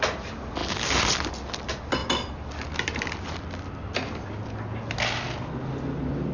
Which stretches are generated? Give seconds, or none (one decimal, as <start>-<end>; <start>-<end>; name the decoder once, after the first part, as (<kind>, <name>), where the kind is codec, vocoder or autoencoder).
none